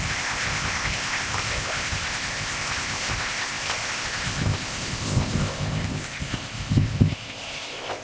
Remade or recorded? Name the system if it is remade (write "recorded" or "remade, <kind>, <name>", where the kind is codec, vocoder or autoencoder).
remade, codec, ZipCodec